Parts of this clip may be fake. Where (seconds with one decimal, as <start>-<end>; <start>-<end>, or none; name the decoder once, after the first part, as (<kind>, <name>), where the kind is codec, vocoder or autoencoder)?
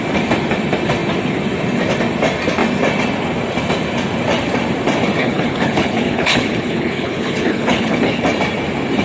5.2-8.2 (codec, HILCodec)